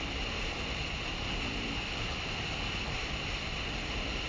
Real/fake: real